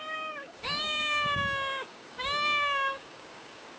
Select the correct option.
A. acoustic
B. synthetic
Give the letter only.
B